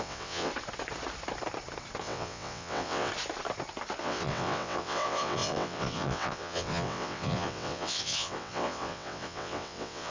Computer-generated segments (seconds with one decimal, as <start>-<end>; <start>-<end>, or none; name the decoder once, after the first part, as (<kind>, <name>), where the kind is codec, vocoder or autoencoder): 0.0-0.5 (vocoder, WaveNeXt); 2.0-3.1; 4.0-10.1